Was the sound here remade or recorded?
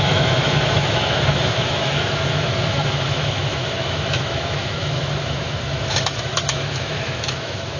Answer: remade